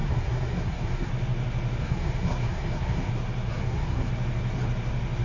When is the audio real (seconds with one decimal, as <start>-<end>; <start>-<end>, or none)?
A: 1.1-1.8; 3.1-3.5; 4.1-5.2